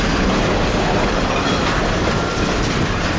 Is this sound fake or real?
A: real